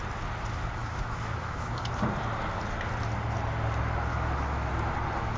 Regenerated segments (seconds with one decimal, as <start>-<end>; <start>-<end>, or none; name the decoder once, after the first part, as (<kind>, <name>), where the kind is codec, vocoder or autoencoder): 0.8-1.7 (autoencoder, DAC-VAE); 4.1-4.7